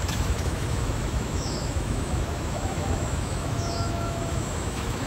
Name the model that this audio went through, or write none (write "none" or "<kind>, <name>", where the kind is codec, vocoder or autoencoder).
autoencoder, DAC-VAE